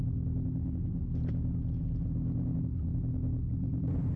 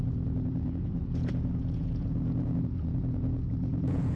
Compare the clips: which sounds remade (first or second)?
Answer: second